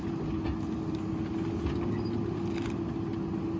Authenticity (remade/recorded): recorded